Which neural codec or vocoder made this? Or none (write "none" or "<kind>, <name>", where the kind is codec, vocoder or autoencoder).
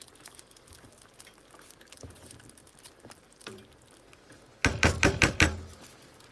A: vocoder, BigVGAN v2